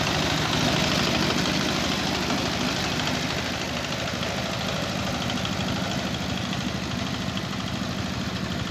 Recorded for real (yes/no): yes